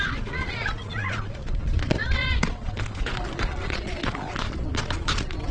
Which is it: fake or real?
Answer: fake